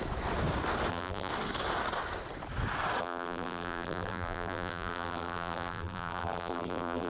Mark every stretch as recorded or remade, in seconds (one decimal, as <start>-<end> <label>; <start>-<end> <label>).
0.0-0.9 recorded; 0.9-1.3 remade; 1.3-3.0 recorded; 3.0-7.1 remade